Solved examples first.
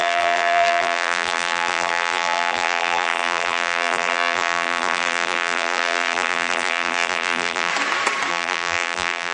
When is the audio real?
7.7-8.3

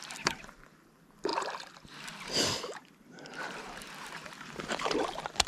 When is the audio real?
1.3-4.6

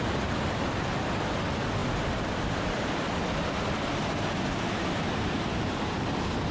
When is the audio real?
0.0-6.5

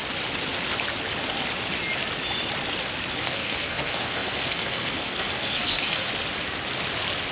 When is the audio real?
0.0-3.2; 6.1-7.3

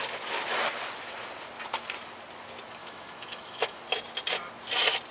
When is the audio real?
0.0-2.8; 3.8-5.1

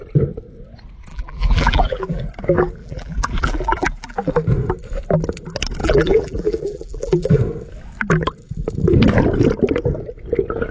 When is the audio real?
0.0-1.1; 2.2-2.8; 4.3-5.8; 7.4-10.7